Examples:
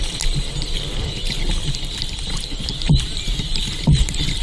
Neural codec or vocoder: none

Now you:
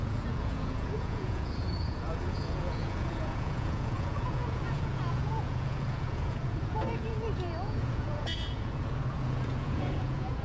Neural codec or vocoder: vocoder, Vocos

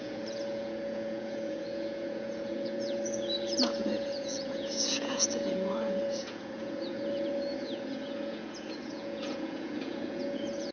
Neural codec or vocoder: vocoder, Vocos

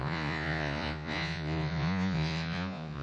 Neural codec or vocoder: vocoder, Vocos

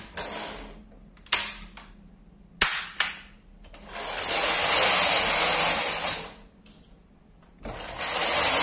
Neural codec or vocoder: none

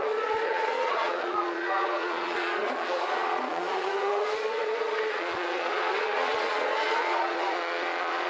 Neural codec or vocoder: vocoder, Vocos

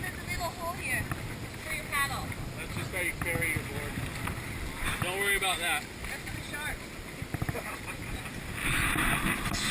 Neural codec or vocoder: none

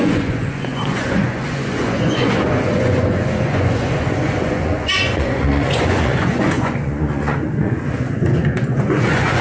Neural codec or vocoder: vocoder, Vocos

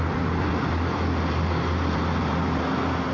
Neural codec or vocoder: none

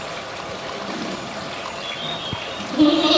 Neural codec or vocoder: none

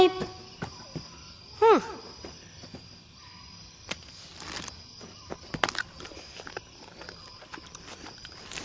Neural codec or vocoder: none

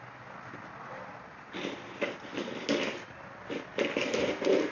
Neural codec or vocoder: none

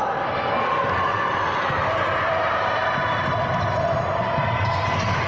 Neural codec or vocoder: none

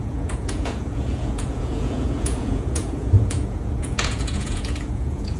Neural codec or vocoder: vocoder, Vocos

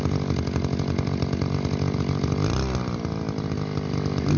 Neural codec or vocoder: none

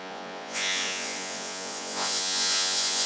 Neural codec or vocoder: vocoder, Vocos